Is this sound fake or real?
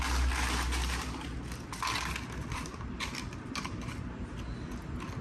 real